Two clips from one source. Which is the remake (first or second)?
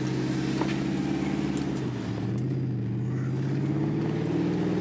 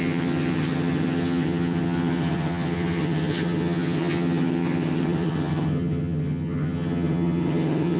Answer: second